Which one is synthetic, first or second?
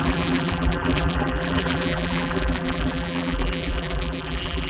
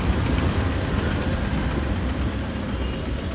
first